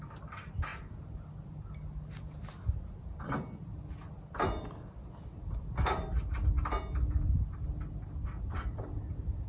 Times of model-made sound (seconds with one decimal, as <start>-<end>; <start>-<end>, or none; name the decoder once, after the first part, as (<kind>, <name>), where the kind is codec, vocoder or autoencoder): none